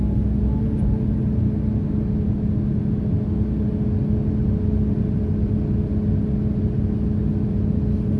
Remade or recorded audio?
recorded